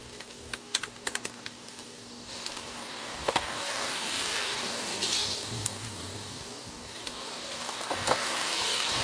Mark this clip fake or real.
fake